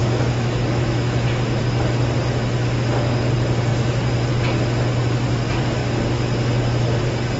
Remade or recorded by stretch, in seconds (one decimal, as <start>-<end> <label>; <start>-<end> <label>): 0.0-1.6 remade; 1.6-7.4 recorded